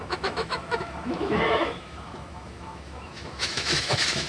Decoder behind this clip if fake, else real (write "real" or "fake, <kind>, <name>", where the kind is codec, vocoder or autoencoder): fake, autoencoder, DAC-VAE